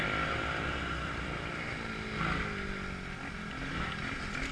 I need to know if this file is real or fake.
real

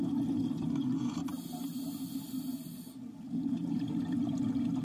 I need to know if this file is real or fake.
real